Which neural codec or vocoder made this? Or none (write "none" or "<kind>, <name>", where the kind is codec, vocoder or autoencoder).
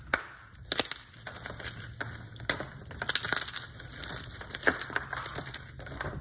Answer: none